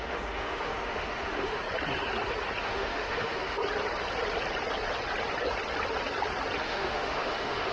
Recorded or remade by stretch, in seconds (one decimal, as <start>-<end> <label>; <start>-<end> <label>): 0.0-1.6 remade; 1.6-2.6 recorded; 2.6-3.6 remade; 3.6-6.6 recorded; 6.6-7.7 remade